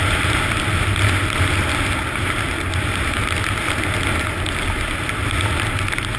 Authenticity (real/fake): real